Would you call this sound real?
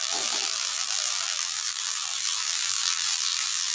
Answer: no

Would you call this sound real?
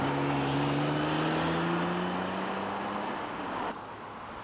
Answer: yes